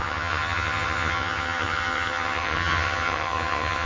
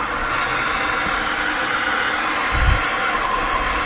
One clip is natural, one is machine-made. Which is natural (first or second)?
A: second